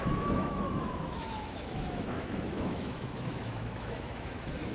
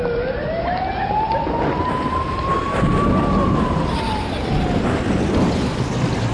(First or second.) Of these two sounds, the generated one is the first